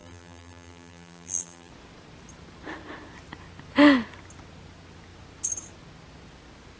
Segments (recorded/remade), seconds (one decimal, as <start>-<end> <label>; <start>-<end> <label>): 0.0-1.7 remade; 1.7-6.8 recorded